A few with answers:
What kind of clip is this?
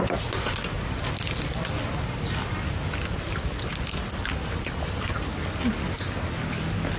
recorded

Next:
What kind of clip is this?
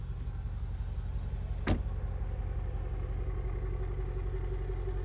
recorded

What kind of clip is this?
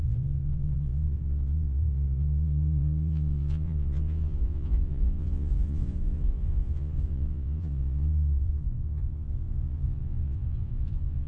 remade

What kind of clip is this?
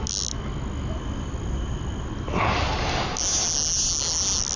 recorded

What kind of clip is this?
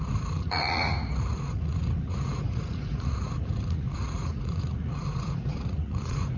remade